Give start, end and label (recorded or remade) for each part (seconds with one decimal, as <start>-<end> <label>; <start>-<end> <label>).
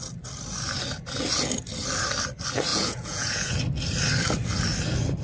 0.0-2.7 recorded; 2.7-3.6 remade; 3.6-5.2 recorded